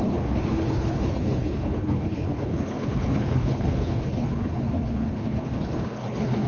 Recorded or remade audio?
remade